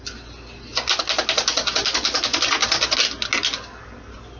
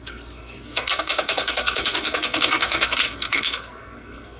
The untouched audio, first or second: first